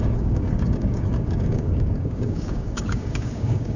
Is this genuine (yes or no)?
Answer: no